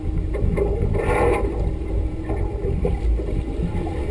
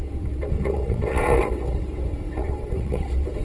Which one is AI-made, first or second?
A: second